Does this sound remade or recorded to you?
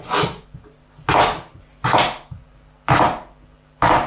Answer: recorded